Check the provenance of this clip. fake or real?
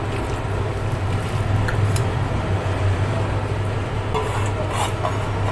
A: real